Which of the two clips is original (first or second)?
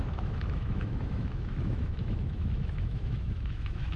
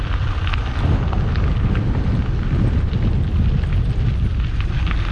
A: second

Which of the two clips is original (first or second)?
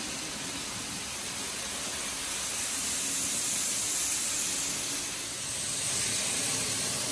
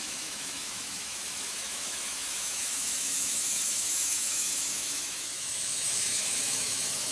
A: first